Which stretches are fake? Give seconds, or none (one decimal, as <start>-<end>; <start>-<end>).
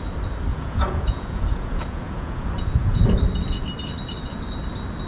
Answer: 0.5-3.0